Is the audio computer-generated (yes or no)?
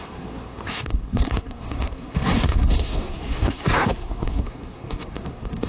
yes